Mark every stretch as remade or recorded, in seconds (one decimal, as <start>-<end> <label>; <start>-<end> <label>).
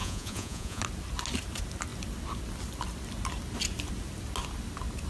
0.0-0.8 remade; 0.8-5.1 recorded